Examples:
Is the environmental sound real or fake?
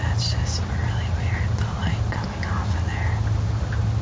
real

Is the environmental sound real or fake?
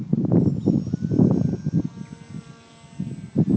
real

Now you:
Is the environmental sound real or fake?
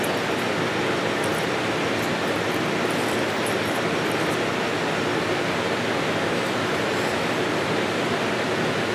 real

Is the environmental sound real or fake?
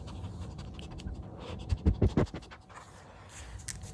real